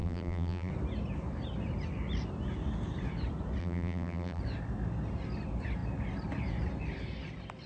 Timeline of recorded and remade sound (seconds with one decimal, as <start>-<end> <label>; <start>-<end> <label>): 0.0-0.7 remade; 0.7-3.6 recorded; 3.6-4.4 remade; 4.4-7.7 recorded